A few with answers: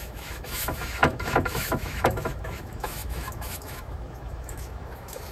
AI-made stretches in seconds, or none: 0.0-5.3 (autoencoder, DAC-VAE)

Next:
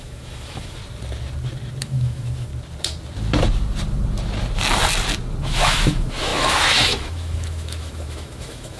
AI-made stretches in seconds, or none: 0.0-0.8 (autoencoder, DAC-VAE); 1.8-2.5; 5.4-8.8

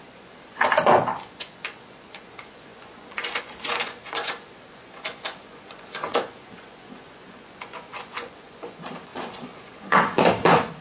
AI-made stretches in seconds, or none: 0.0-10.8 (vocoder, Vocos)